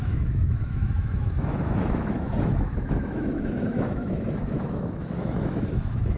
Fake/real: fake